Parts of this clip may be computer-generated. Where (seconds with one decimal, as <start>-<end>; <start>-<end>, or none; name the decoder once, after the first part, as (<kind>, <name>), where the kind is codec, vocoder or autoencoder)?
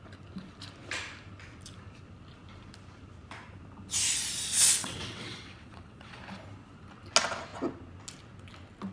4.8-6.2 (vocoder, WaveNeXt)